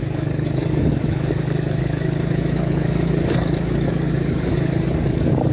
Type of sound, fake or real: fake